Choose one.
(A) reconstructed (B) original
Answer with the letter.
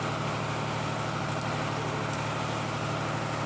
B